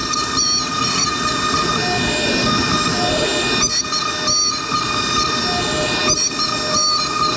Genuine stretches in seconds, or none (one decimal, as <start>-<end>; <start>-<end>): 0.0-2.2; 3.3-4.7; 6.0-7.4